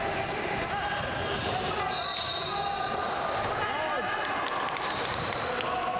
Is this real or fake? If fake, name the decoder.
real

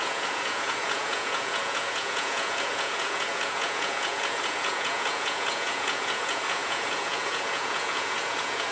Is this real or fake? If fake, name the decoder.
fake, vocoder, Vocos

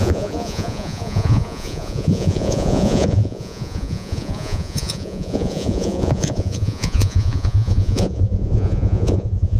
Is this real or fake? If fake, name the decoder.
fake, vocoder, Vocos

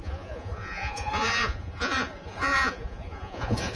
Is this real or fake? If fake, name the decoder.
fake, vocoder, Vocos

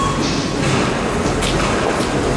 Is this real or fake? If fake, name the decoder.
real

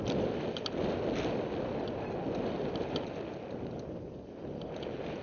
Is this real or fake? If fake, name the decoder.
real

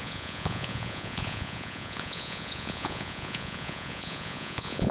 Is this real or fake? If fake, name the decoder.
fake, vocoder, Vocos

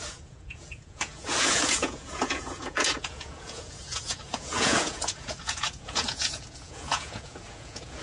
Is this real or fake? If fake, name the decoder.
fake, vocoder, Vocos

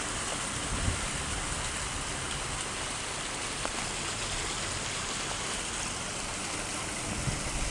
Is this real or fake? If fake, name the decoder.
real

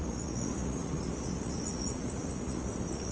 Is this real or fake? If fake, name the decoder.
fake, vocoder, Vocos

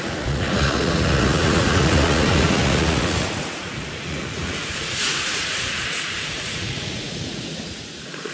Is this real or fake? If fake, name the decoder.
fake, vocoder, Vocos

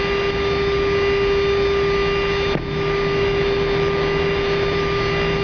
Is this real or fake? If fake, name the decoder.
real